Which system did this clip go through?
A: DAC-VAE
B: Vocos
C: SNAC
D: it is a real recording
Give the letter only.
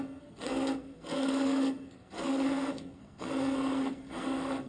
C